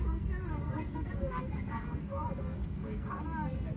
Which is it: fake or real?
fake